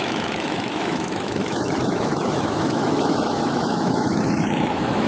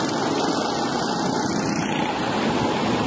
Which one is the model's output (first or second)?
first